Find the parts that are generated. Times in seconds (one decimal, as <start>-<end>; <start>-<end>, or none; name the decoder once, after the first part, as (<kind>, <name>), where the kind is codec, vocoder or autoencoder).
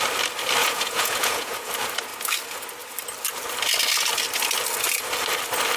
0.6-1.7 (vocoder, Vocos)